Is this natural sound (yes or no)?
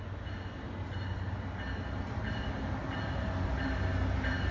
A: yes